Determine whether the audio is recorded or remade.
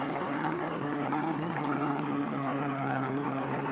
remade